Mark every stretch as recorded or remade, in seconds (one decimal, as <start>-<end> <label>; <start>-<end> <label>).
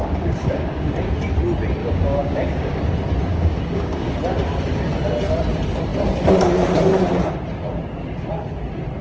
0.0-0.9 remade; 0.9-1.8 recorded; 1.8-2.8 remade; 2.8-3.3 recorded; 3.3-4.1 remade; 4.1-9.0 recorded